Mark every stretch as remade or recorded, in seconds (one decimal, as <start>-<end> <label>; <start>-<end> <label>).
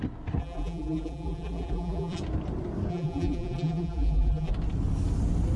0.0-0.4 recorded; 0.4-2.2 remade; 2.2-2.9 recorded; 2.9-4.5 remade; 4.5-5.6 recorded